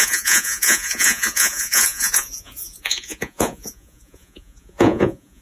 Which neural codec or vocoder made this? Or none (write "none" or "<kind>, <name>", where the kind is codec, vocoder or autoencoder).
vocoder, Vocos